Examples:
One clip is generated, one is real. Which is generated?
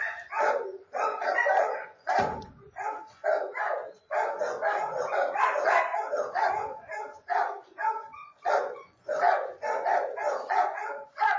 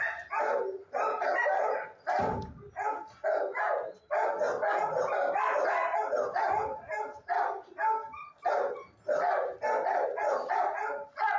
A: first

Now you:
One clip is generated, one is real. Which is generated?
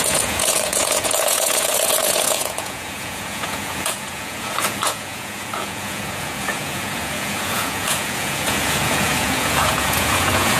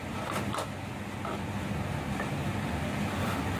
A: first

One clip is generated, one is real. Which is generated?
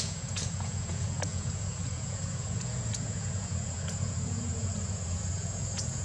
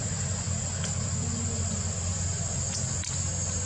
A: first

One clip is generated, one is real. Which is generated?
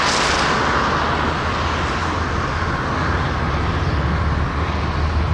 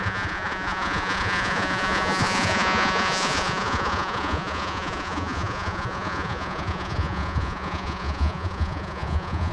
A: second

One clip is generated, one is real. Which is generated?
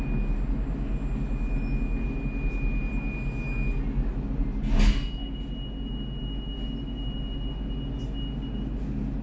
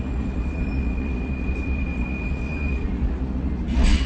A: second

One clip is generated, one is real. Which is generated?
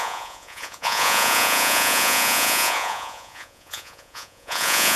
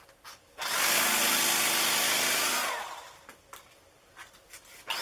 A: first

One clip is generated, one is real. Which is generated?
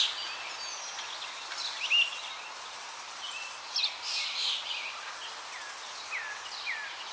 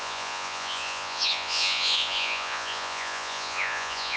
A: second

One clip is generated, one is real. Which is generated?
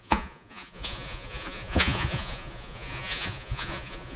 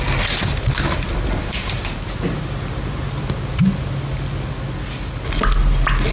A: first